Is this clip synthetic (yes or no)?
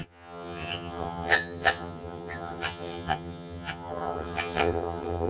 yes